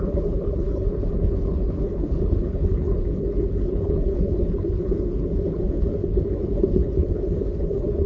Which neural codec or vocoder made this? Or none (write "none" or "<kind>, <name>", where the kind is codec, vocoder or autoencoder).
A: codec, HILCodec